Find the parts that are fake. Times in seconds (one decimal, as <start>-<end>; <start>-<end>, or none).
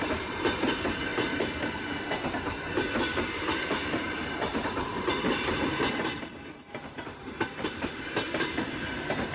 0.0-9.3